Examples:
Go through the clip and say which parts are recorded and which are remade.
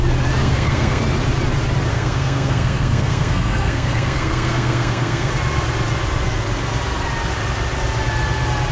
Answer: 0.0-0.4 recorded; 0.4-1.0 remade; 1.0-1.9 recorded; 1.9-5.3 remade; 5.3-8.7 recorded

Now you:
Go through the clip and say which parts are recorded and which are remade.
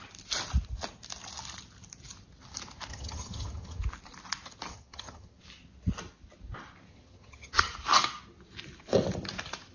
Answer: 0.0-2.9 recorded; 2.9-3.8 remade; 3.8-4.7 recorded; 4.7-5.4 remade; 5.4-6.9 recorded; 6.9-7.7 remade; 7.7-9.7 recorded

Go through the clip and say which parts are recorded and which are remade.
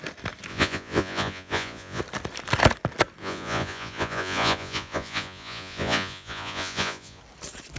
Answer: 0.0-0.5 recorded; 0.5-2.0 remade; 2.0-3.2 recorded; 3.2-7.2 remade; 7.2-7.8 recorded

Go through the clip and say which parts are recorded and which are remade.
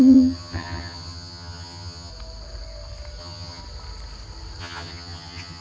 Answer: 0.0-2.1 remade; 2.1-3.2 recorded; 3.2-3.6 remade; 3.6-4.6 recorded; 4.6-5.6 remade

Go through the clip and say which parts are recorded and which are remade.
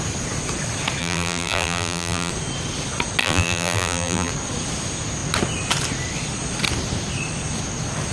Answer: 0.0-1.0 recorded; 1.0-2.3 remade; 2.3-3.2 recorded; 3.2-4.3 remade; 4.3-8.1 recorded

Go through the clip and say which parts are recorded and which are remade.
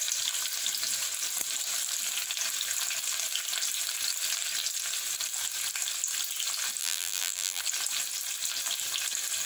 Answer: 0.0-6.8 recorded; 6.8-7.6 remade; 7.6-9.5 recorded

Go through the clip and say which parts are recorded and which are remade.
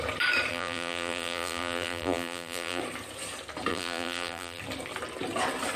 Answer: 0.0-0.5 recorded; 0.5-2.8 remade; 2.8-3.7 recorded; 3.7-4.6 remade; 4.6-5.8 recorded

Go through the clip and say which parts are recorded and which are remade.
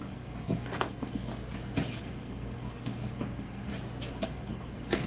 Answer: 0.0-1.3 remade; 1.3-2.0 recorded; 2.0-3.7 remade; 3.7-4.2 recorded; 4.2-5.1 remade